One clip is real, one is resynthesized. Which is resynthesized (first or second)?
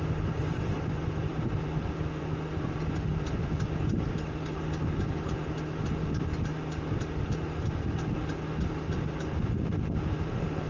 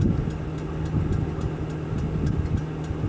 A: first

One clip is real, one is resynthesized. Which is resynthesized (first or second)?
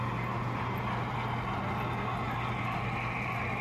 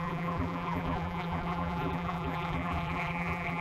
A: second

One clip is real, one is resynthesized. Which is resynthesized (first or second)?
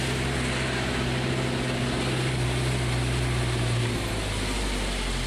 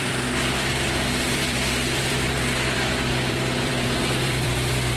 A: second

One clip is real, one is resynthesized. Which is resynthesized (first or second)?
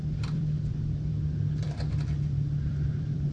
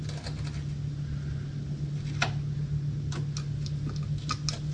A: first